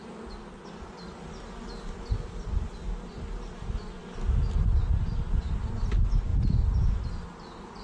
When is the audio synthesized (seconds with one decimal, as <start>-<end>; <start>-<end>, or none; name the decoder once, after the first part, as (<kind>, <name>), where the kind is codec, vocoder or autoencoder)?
6.3-7.0 (vocoder, Vocos)